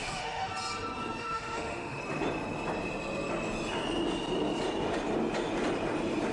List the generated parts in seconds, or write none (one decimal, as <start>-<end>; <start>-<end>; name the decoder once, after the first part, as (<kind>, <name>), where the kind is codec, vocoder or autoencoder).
0.0-0.5 (autoencoder, DAC-VAE); 1.2-2.0